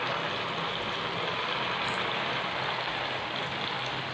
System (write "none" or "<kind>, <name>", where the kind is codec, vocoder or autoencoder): none